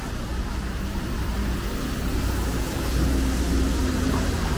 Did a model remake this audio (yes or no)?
no